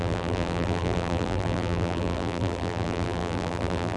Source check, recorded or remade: remade